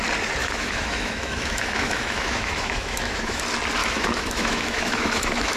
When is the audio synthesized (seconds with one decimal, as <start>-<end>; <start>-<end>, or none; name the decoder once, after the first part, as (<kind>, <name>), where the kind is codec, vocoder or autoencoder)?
0.4-3.4 (autoencoder, DAC-VAE); 3.8-5.6